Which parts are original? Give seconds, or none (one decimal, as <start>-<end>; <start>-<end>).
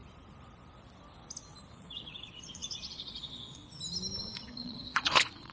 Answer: 0.0-1.7; 3.6-4.2